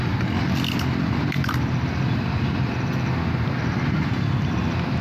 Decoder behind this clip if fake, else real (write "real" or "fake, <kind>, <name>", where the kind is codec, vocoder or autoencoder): real